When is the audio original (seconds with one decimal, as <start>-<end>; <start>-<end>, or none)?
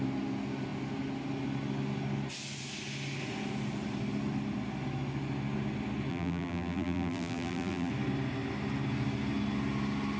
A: 0.0-6.1; 7.9-10.2